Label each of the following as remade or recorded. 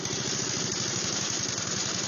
recorded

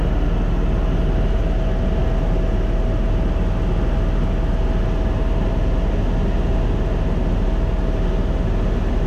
recorded